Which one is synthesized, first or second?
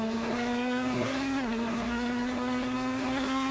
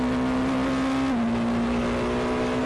first